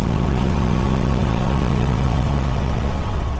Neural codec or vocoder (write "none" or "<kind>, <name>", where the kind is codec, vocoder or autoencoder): vocoder, WaveNeXt